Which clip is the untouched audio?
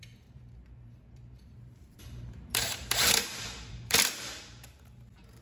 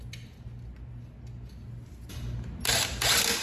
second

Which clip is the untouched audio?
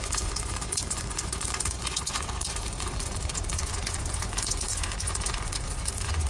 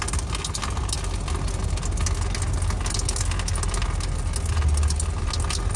second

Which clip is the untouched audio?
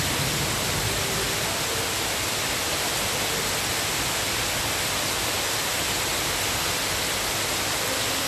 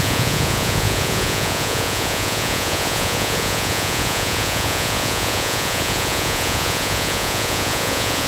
first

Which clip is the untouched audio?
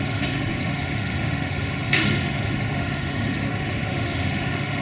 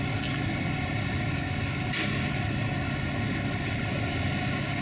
second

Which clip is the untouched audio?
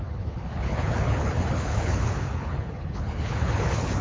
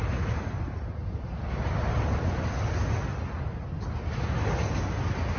second